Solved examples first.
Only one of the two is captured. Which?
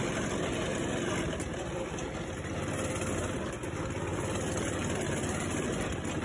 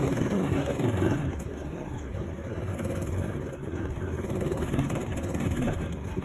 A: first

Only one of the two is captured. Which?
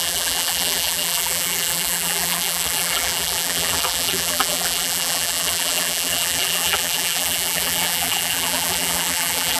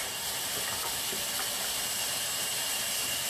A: second